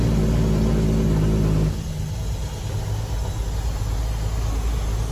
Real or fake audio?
real